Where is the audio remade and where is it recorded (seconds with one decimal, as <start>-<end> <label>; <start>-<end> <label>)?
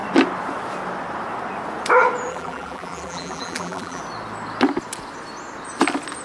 0.0-2.3 recorded; 2.3-4.0 remade; 4.0-6.2 recorded